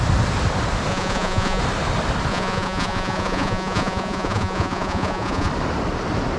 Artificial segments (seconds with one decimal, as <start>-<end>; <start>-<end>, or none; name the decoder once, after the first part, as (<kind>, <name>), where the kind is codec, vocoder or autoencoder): 0.9-1.6 (vocoder, Vocos); 2.3-5.5